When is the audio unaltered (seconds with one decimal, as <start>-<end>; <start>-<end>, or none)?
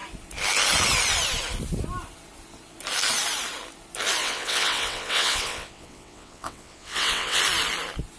0.0-4.2; 7.4-8.2